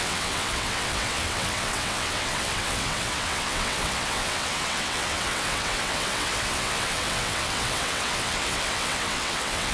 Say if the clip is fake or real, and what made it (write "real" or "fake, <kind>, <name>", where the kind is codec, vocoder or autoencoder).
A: fake, vocoder, WaveNeXt